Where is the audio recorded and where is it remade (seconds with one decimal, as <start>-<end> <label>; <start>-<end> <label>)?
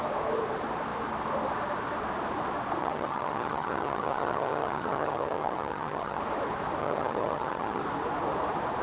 0.0-2.8 recorded; 2.8-6.2 remade; 6.2-6.8 recorded; 6.8-7.8 remade; 7.8-8.8 recorded